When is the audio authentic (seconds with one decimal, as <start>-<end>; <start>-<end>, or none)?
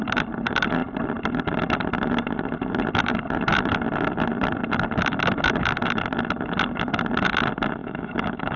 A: 0.0-7.8